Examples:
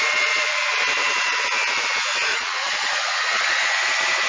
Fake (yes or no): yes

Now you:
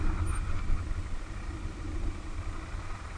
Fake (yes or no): no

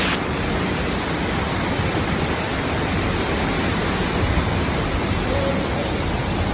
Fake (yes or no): no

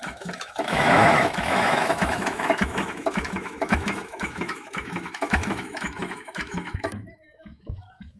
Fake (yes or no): yes